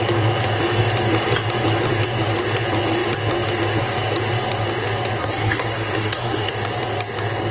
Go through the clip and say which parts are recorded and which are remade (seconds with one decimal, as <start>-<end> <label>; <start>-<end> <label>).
0.0-5.2 recorded; 5.2-6.5 remade; 6.5-7.5 recorded